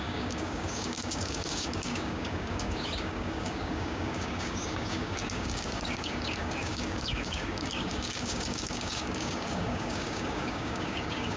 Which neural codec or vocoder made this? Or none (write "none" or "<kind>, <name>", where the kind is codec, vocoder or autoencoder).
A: codec, DAC